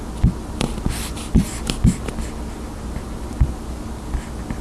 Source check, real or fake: real